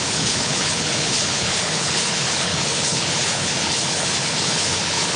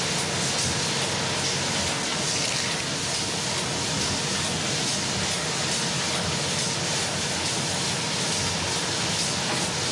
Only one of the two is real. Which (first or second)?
second